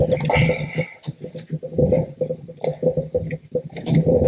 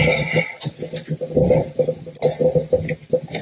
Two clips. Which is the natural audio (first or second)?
second